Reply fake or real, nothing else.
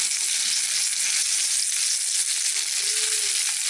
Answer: real